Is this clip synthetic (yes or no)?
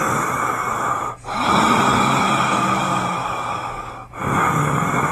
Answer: yes